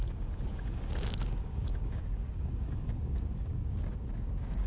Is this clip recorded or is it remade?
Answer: remade